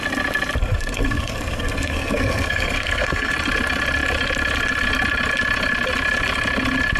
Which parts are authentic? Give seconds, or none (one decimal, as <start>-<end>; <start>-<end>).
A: 0.0-0.6; 3.3-7.0